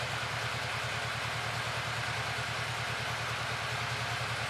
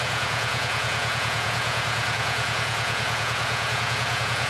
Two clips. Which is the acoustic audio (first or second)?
first